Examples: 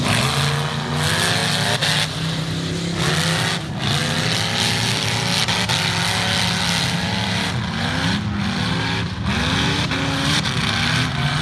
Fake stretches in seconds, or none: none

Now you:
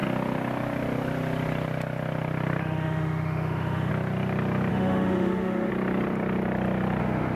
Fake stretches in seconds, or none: 2.6-3.9; 4.7-5.7; 7.0-7.4

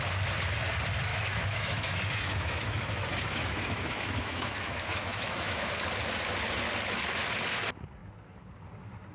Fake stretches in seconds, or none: 1.1-5.7

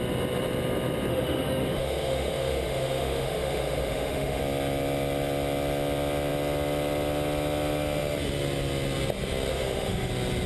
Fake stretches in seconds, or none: 1.1-4.4; 9.5-10.1

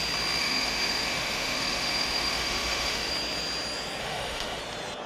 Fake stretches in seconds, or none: 0.4-3.1; 4.0-4.6